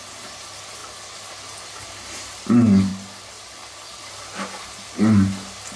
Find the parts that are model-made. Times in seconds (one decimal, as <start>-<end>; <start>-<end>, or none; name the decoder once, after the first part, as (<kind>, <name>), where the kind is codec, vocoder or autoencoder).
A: none